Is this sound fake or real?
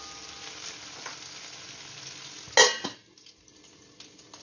real